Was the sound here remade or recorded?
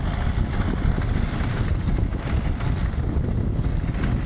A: recorded